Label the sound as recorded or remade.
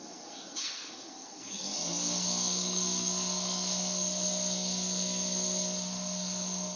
remade